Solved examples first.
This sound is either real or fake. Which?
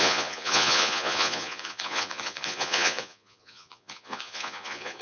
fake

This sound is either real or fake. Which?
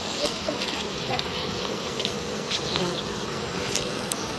fake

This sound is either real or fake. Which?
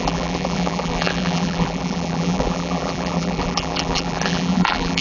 fake